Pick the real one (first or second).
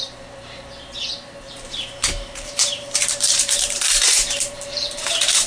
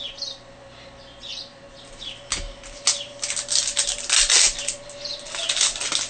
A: second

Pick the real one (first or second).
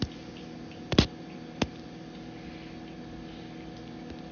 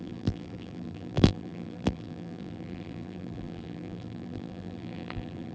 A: first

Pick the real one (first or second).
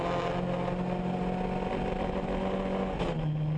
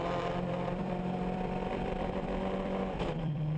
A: first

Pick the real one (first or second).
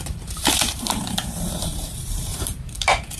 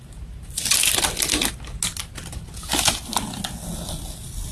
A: second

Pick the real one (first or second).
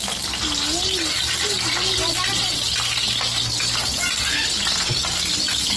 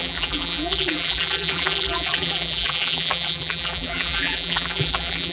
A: first